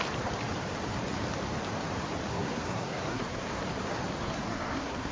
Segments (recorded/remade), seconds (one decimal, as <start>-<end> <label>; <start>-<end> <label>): 0.0-2.3 recorded; 2.3-3.6 remade; 3.6-4.2 recorded; 4.2-5.1 remade